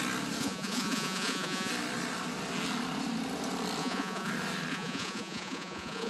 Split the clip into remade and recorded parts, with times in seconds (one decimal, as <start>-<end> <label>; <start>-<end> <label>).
0.0-0.4 recorded; 0.4-1.7 remade; 1.7-3.8 recorded; 3.8-4.3 remade; 4.3-4.7 recorded; 4.7-6.1 remade